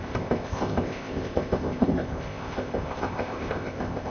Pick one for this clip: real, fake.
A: fake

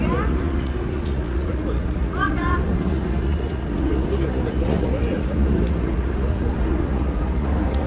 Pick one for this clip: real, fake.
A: fake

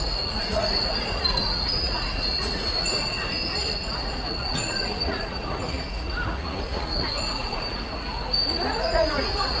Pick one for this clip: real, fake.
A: fake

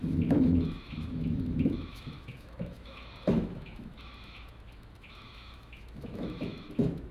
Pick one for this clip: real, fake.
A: fake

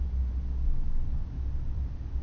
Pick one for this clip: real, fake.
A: real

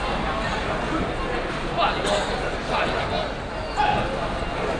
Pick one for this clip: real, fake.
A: real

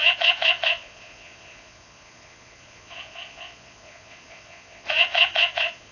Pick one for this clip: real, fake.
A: fake